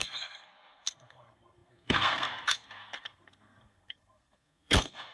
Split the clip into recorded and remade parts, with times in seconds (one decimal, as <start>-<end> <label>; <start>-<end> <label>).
0.0-5.1 remade